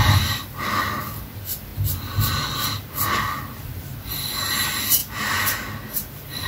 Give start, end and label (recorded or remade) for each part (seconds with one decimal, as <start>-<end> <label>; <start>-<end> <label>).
0.0-1.7 remade; 1.7-3.4 recorded; 3.4-5.0 remade; 5.0-6.1 recorded; 6.1-6.5 remade